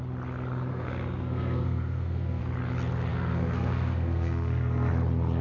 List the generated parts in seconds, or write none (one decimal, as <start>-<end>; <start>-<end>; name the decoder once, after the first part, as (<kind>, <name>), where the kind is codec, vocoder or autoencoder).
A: 0.7-2.4 (codec, SNAC); 3.1-4.9